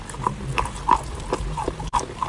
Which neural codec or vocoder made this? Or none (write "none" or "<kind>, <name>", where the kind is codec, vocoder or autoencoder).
none